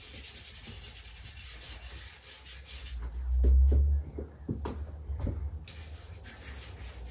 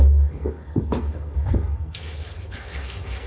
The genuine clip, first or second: first